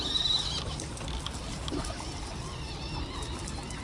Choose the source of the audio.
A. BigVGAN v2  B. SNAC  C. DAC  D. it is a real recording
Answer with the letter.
D